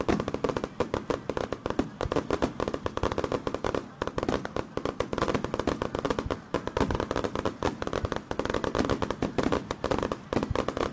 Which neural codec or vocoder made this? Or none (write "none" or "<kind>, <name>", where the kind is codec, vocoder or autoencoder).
none